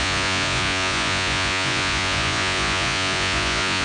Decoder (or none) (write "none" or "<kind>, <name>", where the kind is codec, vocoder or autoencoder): vocoder, Vocos